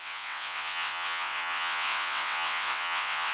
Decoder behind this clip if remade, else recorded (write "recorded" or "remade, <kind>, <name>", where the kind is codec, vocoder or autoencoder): remade, vocoder, WaveNeXt